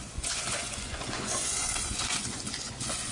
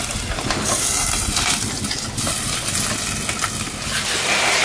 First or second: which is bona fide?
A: second